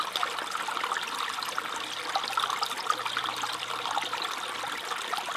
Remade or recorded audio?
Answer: recorded